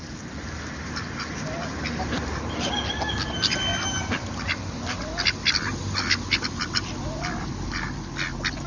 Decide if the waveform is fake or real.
real